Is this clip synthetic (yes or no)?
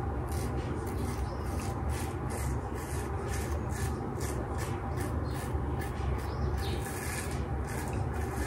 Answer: no